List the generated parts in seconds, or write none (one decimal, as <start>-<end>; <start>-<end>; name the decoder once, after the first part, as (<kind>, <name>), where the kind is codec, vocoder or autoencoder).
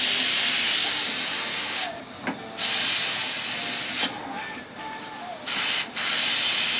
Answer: 1.5-2.0 (codec, DAC)